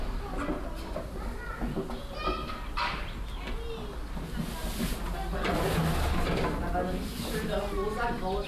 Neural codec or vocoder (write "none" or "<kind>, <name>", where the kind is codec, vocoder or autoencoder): none